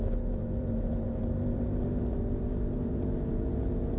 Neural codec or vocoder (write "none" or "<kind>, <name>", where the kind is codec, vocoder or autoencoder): vocoder, BigVGAN v2